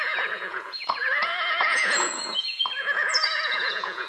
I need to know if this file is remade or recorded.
remade